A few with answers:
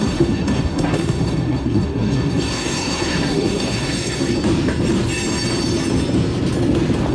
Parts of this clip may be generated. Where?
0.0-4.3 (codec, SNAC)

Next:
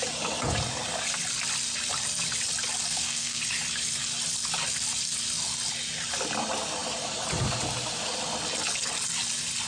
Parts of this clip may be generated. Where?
2.9-3.4 (codec, SNAC)